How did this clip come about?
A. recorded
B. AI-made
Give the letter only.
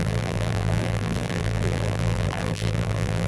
B